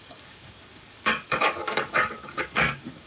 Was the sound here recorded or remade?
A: remade